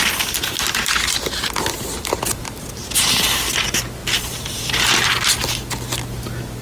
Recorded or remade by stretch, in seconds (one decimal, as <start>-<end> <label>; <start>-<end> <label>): 0.0-4.0 recorded; 4.0-4.7 remade; 4.7-6.6 recorded

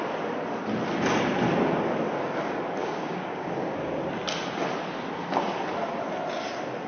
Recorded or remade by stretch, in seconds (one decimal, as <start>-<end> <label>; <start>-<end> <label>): 0.0-2.8 recorded; 2.8-4.0 remade; 4.0-6.9 recorded